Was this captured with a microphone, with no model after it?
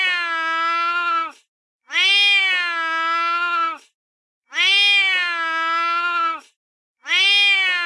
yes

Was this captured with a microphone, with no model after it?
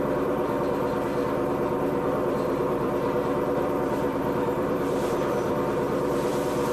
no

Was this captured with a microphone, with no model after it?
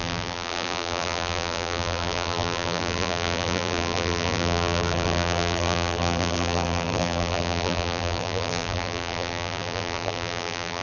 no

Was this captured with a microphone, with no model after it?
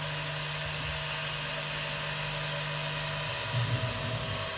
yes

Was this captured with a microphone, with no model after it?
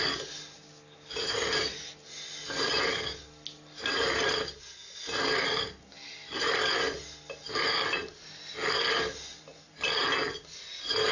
yes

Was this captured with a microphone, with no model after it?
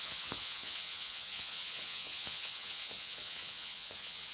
no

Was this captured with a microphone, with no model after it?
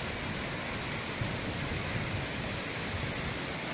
yes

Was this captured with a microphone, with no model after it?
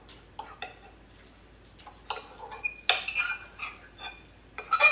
yes